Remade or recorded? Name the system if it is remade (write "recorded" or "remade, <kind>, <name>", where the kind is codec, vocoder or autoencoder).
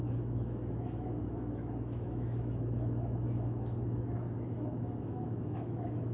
remade, autoencoder, DAC-VAE